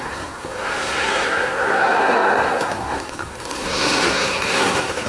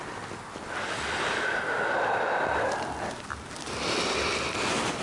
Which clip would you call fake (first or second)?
first